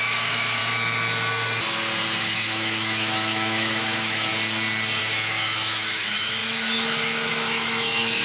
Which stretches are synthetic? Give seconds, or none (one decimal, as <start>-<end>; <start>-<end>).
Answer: 0.0-0.6; 2.2-4.3; 5.0-8.2